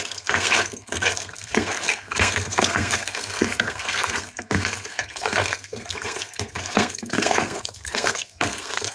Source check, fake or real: fake